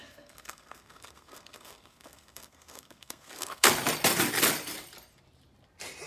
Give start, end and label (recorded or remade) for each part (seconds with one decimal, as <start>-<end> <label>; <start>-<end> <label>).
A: 0.0-3.7 remade; 3.7-6.1 recorded